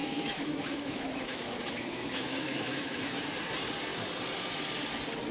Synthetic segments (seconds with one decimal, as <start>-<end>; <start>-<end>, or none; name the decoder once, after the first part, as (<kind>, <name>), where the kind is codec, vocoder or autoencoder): 0.0-3.2 (autoencoder, DAC-VAE)